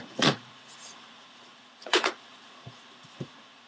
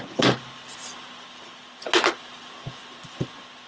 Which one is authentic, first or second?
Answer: second